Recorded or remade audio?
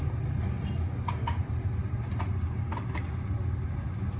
recorded